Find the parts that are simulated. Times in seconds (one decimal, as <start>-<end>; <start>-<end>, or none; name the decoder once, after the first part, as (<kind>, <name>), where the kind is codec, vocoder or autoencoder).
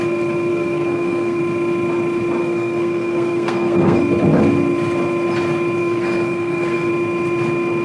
0.5-1.4 (codec, SNAC); 2.4-4.0; 5.8-6.9